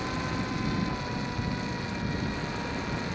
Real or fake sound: real